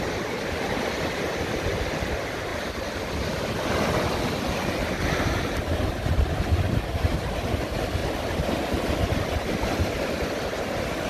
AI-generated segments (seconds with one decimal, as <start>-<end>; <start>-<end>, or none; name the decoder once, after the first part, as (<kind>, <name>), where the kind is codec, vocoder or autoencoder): none